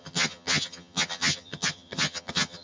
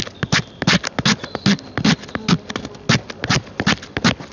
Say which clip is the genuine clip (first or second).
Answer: second